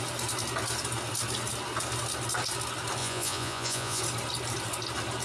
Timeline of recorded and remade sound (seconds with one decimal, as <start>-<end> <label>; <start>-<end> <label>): 0.0-3.0 recorded; 3.0-4.0 remade; 4.0-5.2 recorded